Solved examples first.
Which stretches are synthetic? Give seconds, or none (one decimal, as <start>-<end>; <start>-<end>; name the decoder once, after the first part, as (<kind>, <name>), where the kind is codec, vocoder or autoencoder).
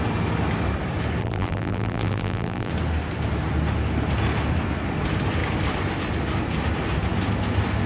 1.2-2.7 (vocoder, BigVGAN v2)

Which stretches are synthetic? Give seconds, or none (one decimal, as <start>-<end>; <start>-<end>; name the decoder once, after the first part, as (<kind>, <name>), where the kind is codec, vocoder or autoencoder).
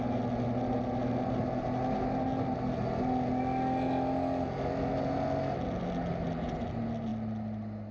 none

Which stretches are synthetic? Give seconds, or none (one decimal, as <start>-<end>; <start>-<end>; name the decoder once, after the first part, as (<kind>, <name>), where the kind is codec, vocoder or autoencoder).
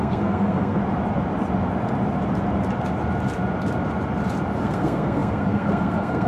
0.0-0.8 (codec, SNAC); 4.6-6.3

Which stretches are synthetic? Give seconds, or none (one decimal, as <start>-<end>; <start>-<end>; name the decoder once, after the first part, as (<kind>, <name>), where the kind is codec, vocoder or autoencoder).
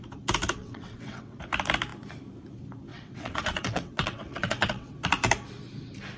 0.6-1.4 (vocoder, WaveNeXt); 2.9-4.9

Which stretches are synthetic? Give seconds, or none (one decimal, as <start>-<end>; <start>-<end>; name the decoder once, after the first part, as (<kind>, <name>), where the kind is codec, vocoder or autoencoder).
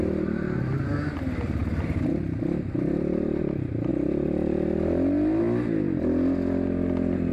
1.6-3.4 (vocoder, BigVGAN v2)